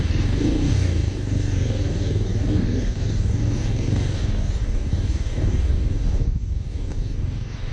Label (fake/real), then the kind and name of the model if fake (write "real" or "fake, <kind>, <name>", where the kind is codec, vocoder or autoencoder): fake, codec, DAC